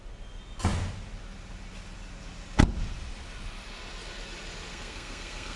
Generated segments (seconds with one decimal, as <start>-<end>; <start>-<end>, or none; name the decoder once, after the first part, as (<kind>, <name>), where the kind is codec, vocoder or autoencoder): 4.7-5.6 (codec, SNAC)